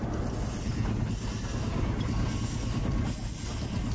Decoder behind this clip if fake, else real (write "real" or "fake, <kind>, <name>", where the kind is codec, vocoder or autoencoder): real